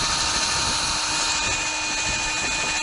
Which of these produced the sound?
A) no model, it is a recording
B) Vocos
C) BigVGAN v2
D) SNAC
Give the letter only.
A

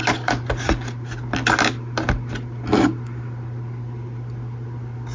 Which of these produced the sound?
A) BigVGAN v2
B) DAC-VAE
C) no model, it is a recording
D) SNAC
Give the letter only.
C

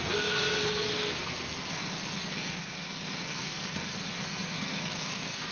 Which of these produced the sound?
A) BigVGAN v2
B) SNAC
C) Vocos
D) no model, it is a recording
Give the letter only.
B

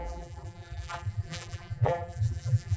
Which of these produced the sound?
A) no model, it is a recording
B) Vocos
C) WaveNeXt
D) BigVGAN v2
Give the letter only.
D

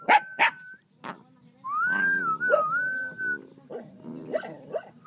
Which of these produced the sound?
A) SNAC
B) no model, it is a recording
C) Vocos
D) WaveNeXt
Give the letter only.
B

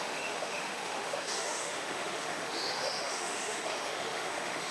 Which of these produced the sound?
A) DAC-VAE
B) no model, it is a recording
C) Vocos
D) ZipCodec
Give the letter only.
A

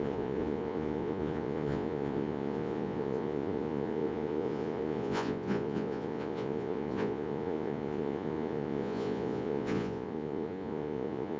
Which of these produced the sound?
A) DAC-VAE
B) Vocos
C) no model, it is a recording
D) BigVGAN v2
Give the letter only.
B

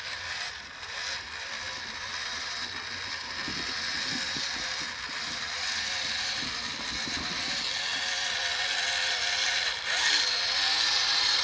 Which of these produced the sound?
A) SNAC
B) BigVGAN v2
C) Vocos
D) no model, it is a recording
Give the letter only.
B